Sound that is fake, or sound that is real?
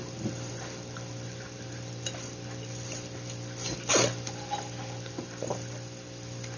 fake